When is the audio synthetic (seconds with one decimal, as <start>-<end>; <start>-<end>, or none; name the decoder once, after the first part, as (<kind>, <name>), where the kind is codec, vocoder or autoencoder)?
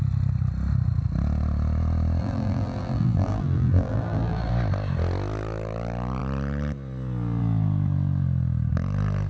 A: 2.2-4.5 (vocoder, BigVGAN v2)